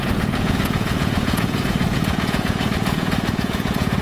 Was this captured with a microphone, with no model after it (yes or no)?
no